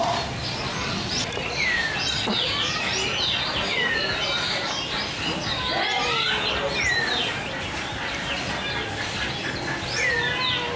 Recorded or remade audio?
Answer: recorded